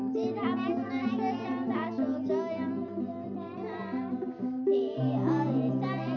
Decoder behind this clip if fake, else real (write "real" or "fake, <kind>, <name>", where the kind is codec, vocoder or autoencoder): fake, vocoder, BigVGAN v2